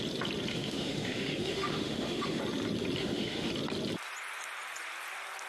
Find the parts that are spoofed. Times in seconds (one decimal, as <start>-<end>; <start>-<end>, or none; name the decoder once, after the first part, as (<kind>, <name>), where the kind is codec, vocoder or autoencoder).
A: 0.5-2.4 (autoencoder, DAC-VAE); 3.0-3.5